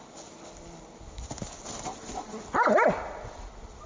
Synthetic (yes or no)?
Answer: no